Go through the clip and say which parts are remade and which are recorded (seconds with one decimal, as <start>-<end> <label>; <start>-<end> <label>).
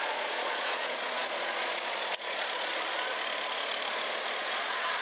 0.0-2.7 remade; 2.7-4.4 recorded; 4.4-5.0 remade